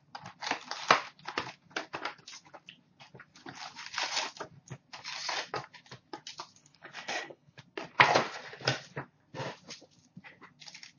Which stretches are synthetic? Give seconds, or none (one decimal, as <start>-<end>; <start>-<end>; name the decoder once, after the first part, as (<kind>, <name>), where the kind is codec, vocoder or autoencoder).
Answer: 6.6-7.6 (codec, HILCodec)